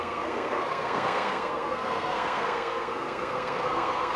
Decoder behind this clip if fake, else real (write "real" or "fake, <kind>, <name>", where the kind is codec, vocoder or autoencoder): fake, codec, SNAC